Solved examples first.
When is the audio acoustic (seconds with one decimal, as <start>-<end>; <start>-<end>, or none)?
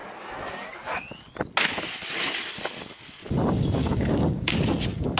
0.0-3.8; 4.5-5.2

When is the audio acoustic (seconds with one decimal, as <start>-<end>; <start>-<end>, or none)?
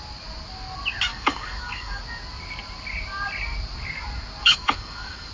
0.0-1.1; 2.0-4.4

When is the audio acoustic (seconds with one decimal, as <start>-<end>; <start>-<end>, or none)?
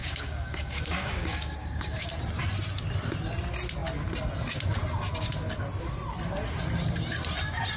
2.1-7.8